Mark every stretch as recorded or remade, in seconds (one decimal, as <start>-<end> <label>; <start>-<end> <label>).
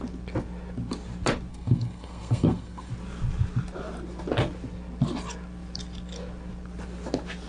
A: 0.0-1.5 recorded; 1.5-2.9 remade; 2.9-7.5 recorded